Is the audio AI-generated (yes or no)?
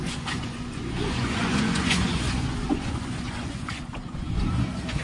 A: yes